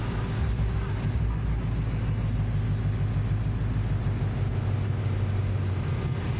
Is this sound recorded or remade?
recorded